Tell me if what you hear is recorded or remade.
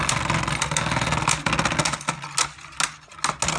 recorded